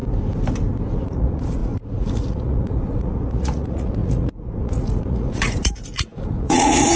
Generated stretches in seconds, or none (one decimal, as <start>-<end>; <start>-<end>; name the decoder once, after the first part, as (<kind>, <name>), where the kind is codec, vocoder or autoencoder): 0.9-7.0 (vocoder, Vocos)